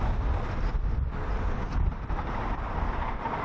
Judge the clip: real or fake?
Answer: real